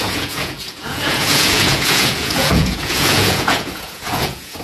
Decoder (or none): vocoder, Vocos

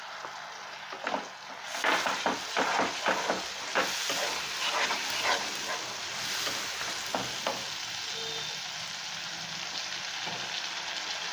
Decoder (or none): none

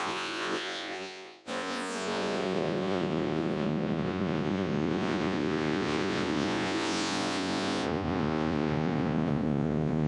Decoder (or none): vocoder, Vocos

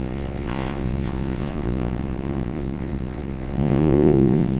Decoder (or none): vocoder, Vocos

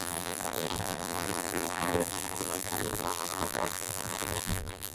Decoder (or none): vocoder, BigVGAN v2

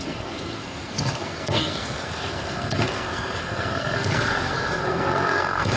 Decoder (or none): codec, SNAC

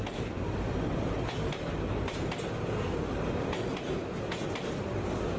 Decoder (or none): none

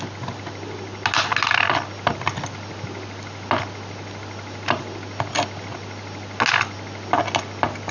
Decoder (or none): none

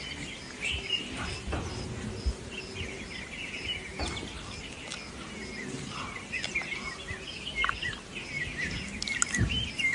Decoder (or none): none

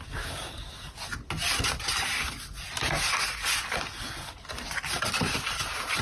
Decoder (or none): none